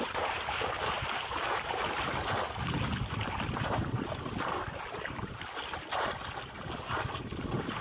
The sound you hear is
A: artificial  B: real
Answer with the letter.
B